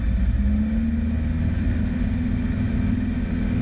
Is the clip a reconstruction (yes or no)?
no